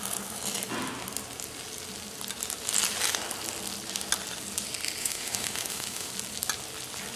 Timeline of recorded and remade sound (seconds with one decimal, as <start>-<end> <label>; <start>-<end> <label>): 0.0-5.0 recorded; 5.0-6.1 remade; 6.1-7.2 recorded